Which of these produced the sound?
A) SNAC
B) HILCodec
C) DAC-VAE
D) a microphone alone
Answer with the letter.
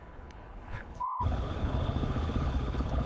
B